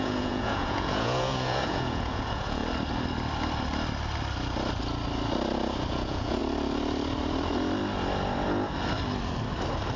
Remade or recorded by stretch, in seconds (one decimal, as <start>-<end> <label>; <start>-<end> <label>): 0.0-2.6 remade; 2.6-5.9 recorded; 5.9-6.4 remade; 6.4-10.0 recorded